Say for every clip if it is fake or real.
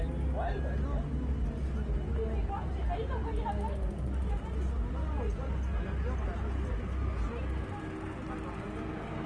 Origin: real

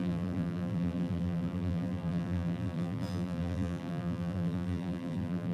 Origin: fake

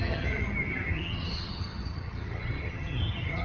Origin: fake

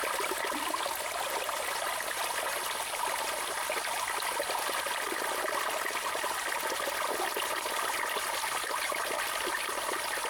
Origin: real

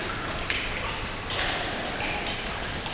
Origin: real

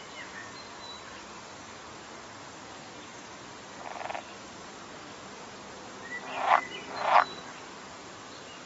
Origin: real